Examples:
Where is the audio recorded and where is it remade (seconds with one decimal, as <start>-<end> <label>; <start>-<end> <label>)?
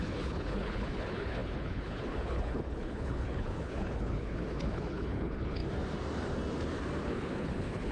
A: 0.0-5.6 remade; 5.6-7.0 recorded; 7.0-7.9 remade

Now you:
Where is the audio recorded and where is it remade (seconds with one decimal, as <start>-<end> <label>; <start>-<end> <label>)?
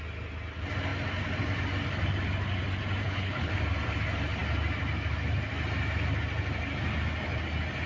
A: 0.0-3.0 recorded; 3.0-3.5 remade; 3.5-7.9 recorded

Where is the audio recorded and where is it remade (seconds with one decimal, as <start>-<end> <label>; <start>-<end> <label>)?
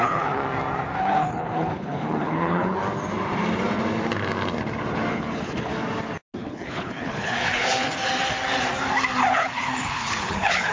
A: 0.0-0.4 remade; 0.4-1.0 recorded; 1.0-2.8 remade; 2.8-5.1 recorded; 5.1-5.7 remade; 5.7-6.4 recorded; 6.4-7.9 remade; 7.9-9.3 recorded; 9.3-10.7 remade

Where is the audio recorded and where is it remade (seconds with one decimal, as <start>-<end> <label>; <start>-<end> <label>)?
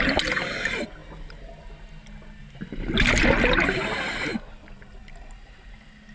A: 0.0-6.1 recorded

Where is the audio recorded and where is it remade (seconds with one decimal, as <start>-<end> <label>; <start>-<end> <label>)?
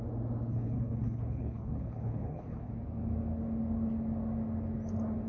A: 0.0-0.5 recorded; 0.5-2.7 remade; 2.7-5.3 recorded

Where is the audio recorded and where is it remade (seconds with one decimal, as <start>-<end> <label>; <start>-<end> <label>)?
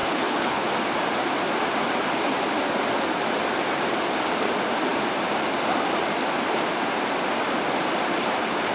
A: 0.0-0.7 remade; 0.7-8.7 recorded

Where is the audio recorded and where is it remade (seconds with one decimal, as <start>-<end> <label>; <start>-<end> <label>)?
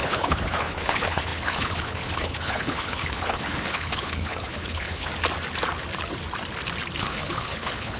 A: 0.0-5.1 remade; 5.1-7.0 recorded; 7.0-8.0 remade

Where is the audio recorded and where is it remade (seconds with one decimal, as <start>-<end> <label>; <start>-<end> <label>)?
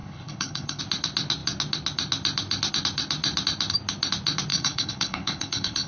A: 0.0-0.8 remade; 0.8-4.5 recorded; 4.5-5.9 remade